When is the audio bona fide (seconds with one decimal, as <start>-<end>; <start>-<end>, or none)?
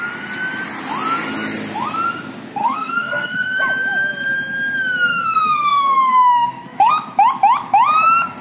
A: 0.0-2.6; 3.6-5.1; 6.9-8.4